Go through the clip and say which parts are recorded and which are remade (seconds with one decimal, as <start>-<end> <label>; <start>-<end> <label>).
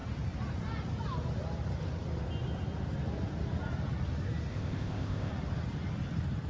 0.0-4.5 recorded; 4.5-5.3 remade; 5.3-6.5 recorded